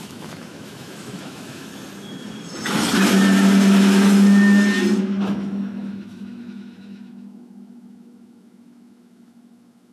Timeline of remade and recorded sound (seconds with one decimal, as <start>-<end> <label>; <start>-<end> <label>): 0.0-1.7 remade; 1.7-5.0 recorded; 5.0-9.9 remade